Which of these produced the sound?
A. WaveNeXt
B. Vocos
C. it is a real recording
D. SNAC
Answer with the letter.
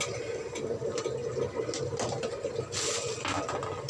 C